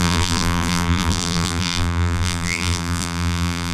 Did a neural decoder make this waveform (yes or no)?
yes